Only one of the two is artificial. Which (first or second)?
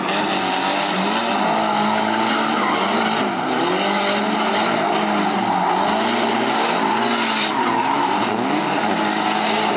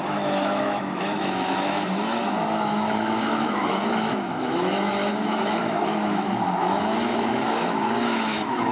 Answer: second